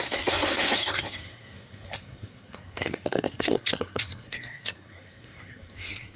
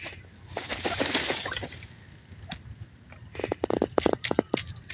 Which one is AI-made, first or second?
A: first